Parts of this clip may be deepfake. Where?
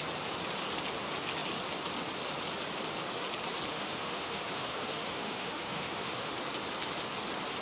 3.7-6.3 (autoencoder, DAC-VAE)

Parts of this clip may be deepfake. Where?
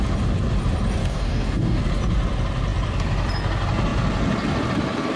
1.0-1.8 (codec, DAC)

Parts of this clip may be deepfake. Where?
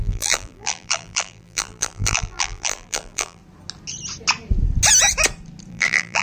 0.0-3.4 (vocoder, BigVGAN v2); 5.7-6.2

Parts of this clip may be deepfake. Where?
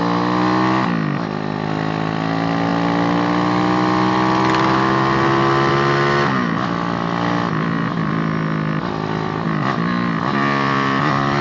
none